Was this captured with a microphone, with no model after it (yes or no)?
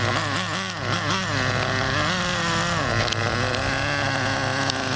yes